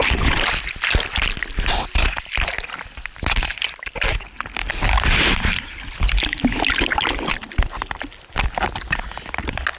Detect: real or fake real